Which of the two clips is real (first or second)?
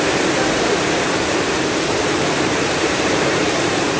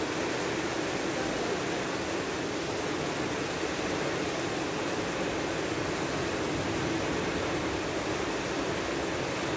second